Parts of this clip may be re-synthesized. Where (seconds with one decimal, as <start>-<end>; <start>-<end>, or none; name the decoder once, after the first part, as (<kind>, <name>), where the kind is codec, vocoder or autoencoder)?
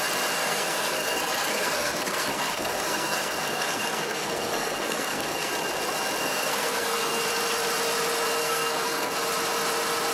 0.4-5.5 (codec, SNAC); 6.2-7.2; 8.4-9.1